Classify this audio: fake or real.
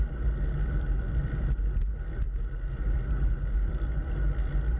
real